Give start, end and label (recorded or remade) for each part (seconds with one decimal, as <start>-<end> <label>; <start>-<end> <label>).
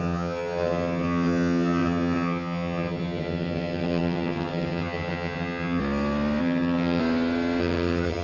0.0-5.8 remade; 5.8-6.4 recorded; 6.4-7.0 remade; 7.0-7.6 recorded; 7.6-8.2 remade